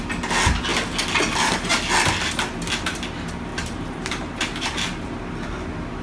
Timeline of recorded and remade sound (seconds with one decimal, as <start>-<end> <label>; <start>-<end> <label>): 0.0-3.5 recorded; 3.5-5.3 remade; 5.3-6.0 recorded